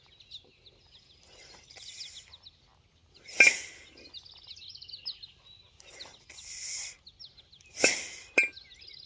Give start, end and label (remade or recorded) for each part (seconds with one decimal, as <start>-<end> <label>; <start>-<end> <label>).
0.0-9.1 recorded